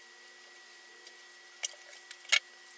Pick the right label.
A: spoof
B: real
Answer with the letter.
B